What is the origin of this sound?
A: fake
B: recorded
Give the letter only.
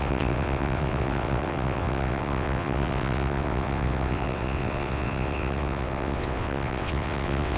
A